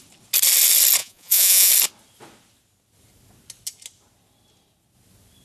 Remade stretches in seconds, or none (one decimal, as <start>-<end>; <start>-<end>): 1.0-1.7